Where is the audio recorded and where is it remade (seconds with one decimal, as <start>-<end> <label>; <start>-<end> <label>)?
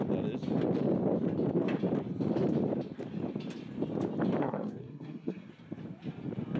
0.0-4.4 recorded; 4.4-5.5 remade; 5.5-6.6 recorded